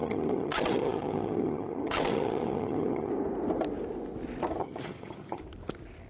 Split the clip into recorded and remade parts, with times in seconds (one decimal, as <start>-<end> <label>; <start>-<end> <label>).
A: 0.0-3.1 remade; 3.1-4.6 recorded; 4.6-5.4 remade; 5.4-6.1 recorded